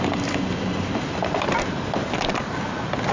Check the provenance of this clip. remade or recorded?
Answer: recorded